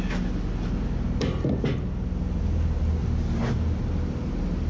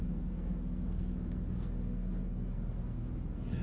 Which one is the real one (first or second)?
first